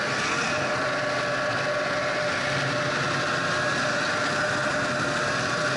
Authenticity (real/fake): real